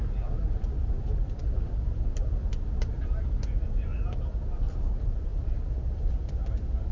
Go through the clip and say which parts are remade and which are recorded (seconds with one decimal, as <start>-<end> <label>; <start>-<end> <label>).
0.0-0.8 recorded; 0.8-4.4 remade; 4.4-5.3 recorded; 5.3-6.3 remade; 6.3-6.9 recorded